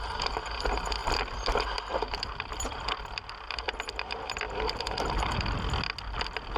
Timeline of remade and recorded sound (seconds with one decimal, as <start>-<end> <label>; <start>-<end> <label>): 0.0-1.0 recorded; 1.0-5.0 remade; 5.0-6.6 recorded